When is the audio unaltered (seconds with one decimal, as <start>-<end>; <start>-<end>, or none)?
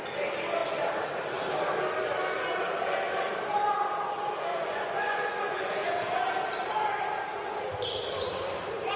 0.0-4.5; 5.9-9.0